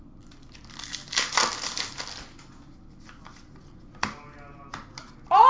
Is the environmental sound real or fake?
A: real